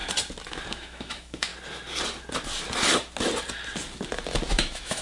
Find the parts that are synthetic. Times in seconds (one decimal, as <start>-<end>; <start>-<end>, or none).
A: 0.7-1.5; 4.5-5.0